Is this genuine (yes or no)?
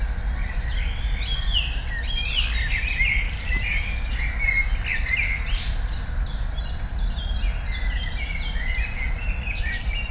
yes